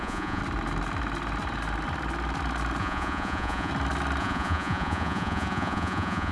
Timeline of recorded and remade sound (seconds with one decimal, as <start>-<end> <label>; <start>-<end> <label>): 0.0-0.4 remade; 0.4-2.8 recorded; 2.8-3.7 remade; 3.7-4.2 recorded; 4.2-6.3 remade